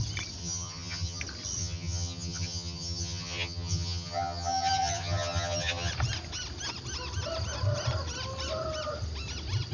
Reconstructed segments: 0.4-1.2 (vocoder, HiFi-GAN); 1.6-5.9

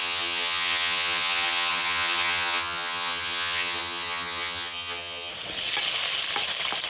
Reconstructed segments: 0.0-5.3 (vocoder, HiFi-GAN)